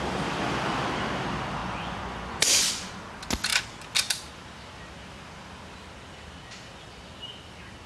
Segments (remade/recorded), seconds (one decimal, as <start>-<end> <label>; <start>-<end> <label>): 0.0-1.6 recorded; 1.6-2.9 remade; 2.9-7.9 recorded